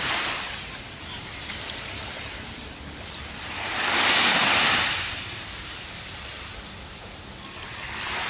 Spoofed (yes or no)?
yes